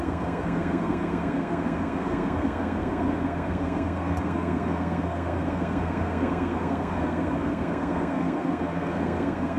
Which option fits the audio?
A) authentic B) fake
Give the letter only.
B